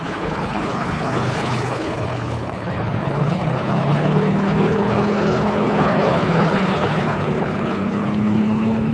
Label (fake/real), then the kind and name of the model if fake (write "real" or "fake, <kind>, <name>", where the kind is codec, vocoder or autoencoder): fake, codec, HILCodec